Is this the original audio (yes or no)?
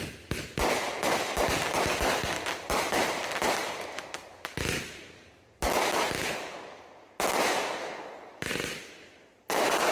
yes